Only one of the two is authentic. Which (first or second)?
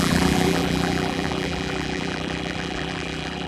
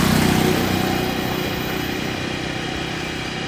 second